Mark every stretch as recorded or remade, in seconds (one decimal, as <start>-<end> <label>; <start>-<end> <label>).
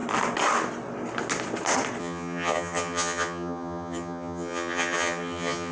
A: 0.0-2.0 recorded; 2.0-5.7 remade